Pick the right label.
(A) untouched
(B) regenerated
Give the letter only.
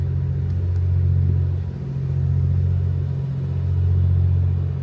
A